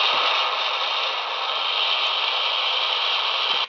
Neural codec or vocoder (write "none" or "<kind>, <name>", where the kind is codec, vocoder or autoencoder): none